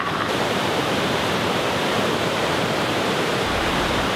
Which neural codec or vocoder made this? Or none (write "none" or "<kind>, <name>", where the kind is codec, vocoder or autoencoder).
vocoder, BigVGAN v2